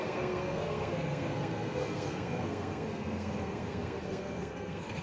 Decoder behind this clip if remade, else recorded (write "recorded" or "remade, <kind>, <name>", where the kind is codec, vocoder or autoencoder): remade, codec, SNAC